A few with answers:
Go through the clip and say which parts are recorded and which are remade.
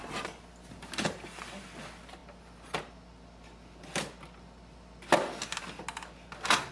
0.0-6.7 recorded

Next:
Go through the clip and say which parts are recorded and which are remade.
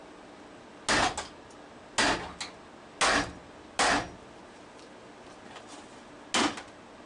0.0-7.1 recorded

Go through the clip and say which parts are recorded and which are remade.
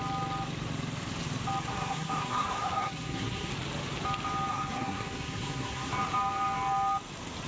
0.0-1.7 recorded; 1.7-3.5 remade; 3.5-4.5 recorded; 4.5-5.9 remade; 5.9-7.5 recorded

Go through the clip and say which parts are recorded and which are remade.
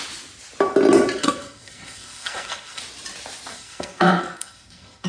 0.0-1.2 recorded; 1.2-2.8 remade; 2.8-3.5 recorded; 3.5-5.1 remade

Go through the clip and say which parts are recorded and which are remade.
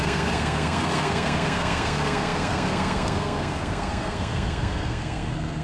0.0-5.6 remade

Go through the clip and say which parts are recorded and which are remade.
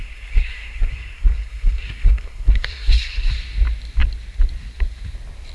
0.0-3.3 remade; 3.3-5.5 recorded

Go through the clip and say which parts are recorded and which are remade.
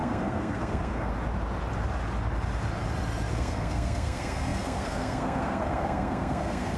0.0-1.1 remade; 1.1-3.3 recorded; 3.3-6.8 remade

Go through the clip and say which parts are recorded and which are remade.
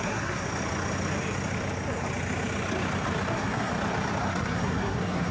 0.0-0.5 remade; 0.5-3.3 recorded; 3.3-3.7 remade; 3.7-4.3 recorded; 4.3-5.3 remade